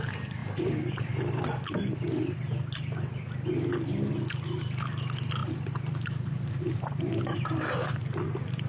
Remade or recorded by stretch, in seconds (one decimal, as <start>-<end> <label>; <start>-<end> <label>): 0.0-0.4 recorded; 0.4-1.1 remade; 1.1-5.4 recorded; 5.4-8.7 remade